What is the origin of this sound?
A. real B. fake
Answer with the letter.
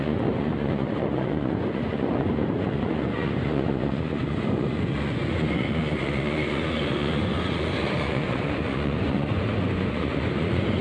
B